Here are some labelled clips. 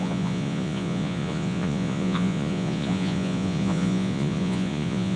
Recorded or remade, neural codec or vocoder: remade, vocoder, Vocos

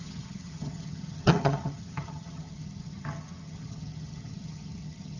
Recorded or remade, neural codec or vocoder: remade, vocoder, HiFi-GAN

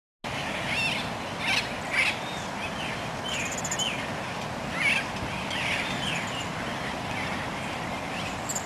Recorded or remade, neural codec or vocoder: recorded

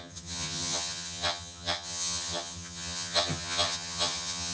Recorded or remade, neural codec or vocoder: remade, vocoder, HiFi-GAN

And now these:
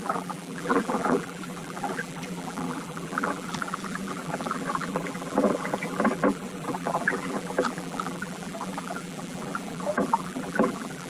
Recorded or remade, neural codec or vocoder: remade, vocoder, BigVGAN v2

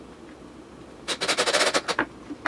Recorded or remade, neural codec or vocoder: recorded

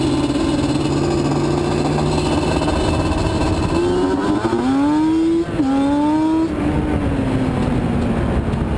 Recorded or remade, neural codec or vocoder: recorded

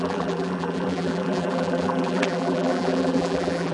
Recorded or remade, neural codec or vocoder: remade, vocoder, BigVGAN v2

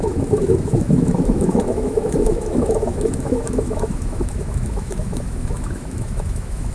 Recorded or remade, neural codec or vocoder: remade, autoencoder, DAC-VAE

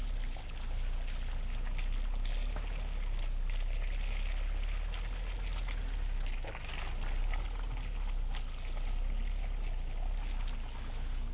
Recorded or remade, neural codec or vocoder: recorded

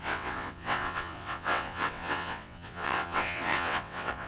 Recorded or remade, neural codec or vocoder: remade, vocoder, WaveNeXt